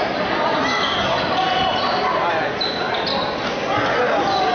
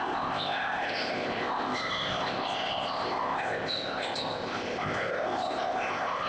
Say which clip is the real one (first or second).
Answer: first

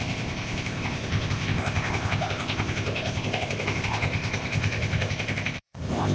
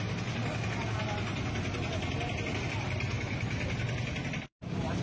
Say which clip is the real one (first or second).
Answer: second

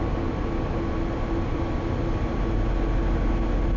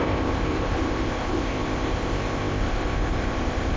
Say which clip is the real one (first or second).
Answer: first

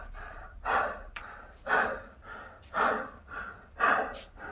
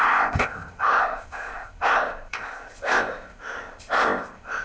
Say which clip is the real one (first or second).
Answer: first